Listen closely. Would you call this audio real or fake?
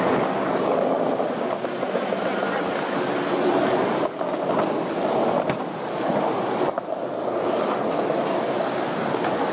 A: real